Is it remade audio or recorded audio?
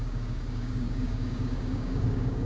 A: remade